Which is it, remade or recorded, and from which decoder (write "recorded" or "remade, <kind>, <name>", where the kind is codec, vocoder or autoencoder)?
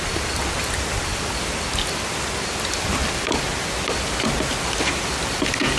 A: recorded